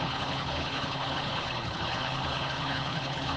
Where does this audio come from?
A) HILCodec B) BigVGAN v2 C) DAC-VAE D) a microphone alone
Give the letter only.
A